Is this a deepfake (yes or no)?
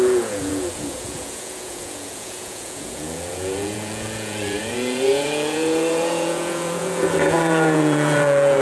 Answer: yes